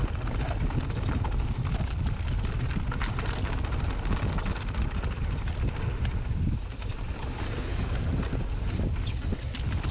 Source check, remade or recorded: recorded